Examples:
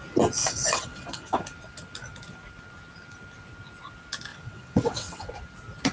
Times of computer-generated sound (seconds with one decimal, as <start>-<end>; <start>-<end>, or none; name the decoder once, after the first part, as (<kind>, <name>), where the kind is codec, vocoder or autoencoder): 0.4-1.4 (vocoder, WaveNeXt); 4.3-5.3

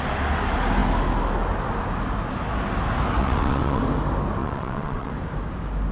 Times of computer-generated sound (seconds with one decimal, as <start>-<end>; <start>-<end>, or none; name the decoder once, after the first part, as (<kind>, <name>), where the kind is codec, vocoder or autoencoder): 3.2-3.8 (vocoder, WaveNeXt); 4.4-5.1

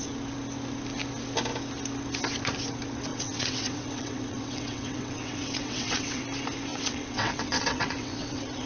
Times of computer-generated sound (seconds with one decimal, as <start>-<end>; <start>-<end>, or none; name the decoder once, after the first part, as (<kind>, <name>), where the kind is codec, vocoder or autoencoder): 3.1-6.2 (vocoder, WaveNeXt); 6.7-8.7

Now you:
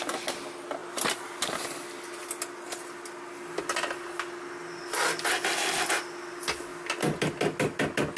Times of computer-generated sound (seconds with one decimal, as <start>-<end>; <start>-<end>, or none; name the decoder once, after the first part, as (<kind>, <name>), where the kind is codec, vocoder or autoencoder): none